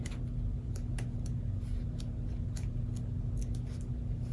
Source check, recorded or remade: recorded